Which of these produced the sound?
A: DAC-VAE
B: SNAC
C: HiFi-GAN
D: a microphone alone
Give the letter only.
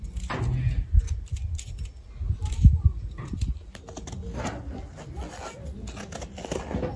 D